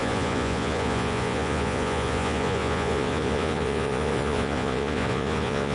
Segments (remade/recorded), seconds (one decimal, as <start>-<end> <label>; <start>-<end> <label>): 0.0-5.7 remade